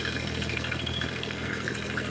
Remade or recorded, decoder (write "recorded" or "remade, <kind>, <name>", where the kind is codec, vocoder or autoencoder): remade, codec, SNAC